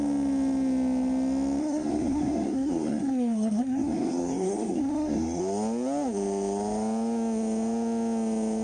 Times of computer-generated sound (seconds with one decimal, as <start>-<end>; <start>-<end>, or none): 1.6-5.4